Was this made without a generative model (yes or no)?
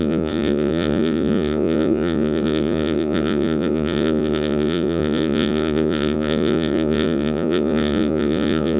no